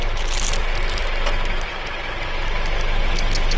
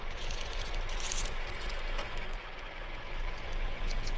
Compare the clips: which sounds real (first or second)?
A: first